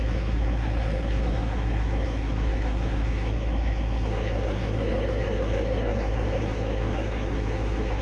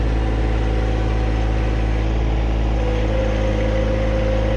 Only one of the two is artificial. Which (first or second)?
first